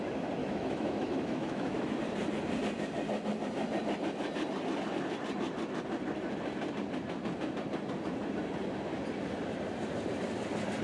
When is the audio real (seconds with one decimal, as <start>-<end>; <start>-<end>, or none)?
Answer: 0.0-0.4; 2.0-10.8